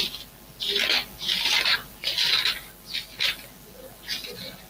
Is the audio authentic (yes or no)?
yes